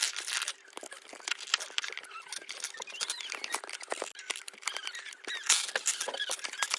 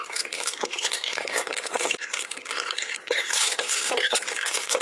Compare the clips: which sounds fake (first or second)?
second